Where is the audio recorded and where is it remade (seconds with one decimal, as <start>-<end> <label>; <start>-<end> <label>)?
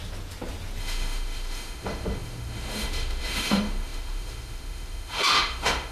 0.0-0.8 recorded; 0.8-5.9 remade